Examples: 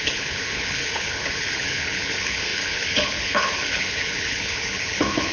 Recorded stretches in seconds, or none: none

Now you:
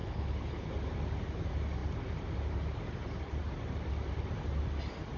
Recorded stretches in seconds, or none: 0.7-5.2

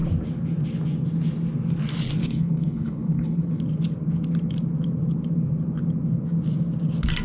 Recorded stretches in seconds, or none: 0.0-2.2; 3.6-7.2

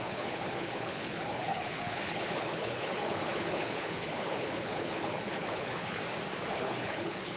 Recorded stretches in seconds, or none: 6.0-6.5